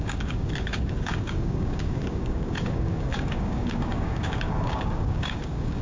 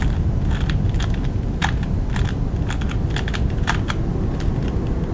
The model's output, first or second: first